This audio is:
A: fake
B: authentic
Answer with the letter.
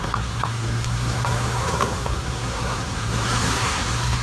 A